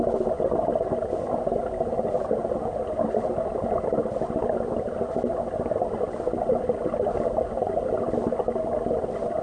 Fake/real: real